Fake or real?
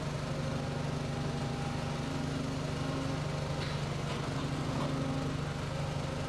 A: real